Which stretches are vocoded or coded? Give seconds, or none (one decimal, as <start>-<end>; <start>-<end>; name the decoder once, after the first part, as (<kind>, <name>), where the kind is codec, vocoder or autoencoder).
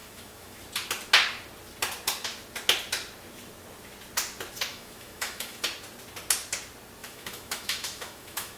0.0-0.6 (autoencoder, DAC-VAE); 4.7-5.6; 7.0-8.6